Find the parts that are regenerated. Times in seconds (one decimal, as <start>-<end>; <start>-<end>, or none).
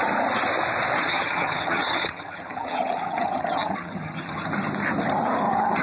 1.0-4.5